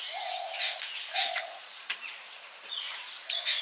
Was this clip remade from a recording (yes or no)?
yes